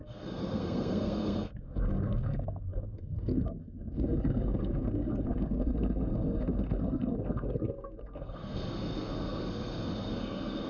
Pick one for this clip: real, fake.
fake